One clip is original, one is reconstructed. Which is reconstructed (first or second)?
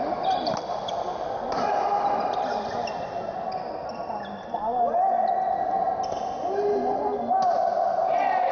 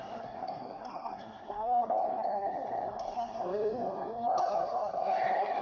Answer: second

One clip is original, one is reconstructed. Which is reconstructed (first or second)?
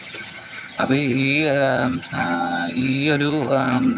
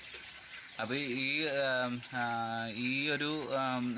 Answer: first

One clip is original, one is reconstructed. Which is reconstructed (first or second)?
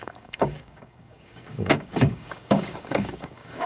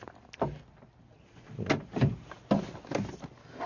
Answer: first